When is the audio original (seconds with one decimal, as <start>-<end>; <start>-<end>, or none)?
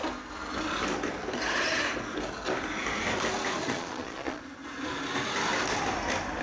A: 0.0-3.6; 4.4-6.4